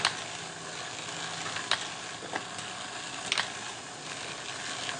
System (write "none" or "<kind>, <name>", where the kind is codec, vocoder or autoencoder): none